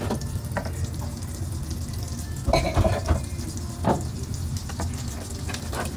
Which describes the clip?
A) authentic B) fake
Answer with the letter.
A